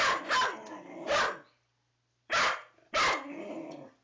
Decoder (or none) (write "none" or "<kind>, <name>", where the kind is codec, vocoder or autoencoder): none